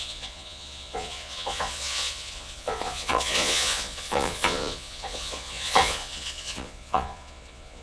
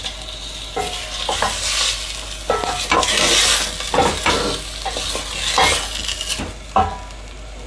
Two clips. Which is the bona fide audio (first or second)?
second